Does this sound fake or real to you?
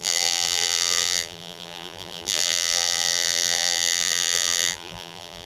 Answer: fake